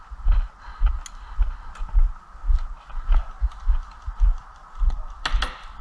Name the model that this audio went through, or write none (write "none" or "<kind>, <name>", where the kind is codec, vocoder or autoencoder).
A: none